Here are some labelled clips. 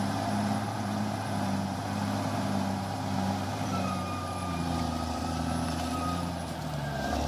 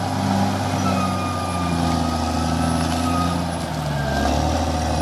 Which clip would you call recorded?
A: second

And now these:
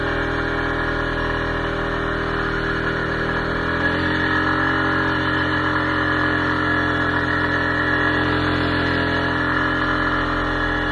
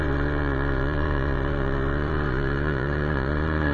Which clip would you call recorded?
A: first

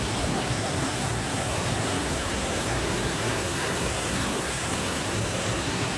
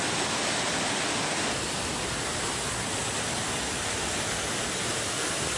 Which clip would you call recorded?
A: second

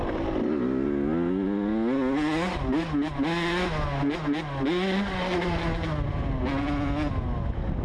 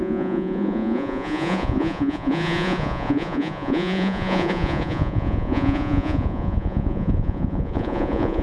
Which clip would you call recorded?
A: first